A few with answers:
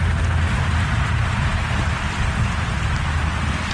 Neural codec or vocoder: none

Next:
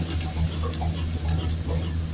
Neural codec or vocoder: none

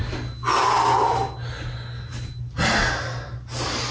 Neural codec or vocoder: none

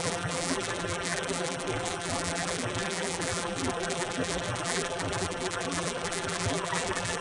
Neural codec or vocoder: vocoder, BigVGAN v2